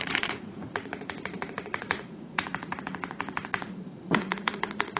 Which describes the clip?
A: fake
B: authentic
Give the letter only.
A